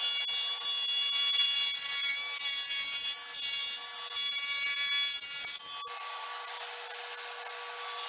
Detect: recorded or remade recorded